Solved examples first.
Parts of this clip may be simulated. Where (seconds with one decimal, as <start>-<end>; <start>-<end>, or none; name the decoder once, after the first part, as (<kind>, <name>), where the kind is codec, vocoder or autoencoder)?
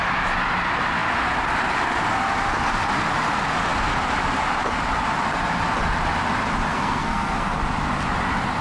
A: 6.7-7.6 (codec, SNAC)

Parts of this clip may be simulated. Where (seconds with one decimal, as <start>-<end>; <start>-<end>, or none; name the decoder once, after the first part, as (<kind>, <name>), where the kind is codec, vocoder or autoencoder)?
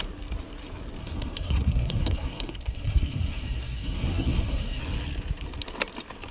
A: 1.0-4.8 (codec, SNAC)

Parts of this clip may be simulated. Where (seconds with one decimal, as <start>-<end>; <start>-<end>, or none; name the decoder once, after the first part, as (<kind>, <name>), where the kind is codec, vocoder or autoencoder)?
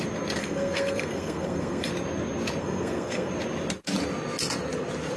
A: 0.4-1.9 (codec, SNAC); 2.6-3.3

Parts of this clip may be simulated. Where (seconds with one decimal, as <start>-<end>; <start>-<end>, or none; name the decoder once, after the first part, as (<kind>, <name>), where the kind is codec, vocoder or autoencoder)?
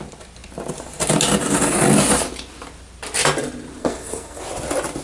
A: 3.8-4.4 (codec, SNAC)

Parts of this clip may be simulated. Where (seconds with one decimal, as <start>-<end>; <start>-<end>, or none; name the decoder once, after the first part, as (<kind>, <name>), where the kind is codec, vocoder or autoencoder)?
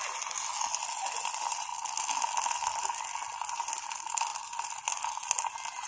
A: none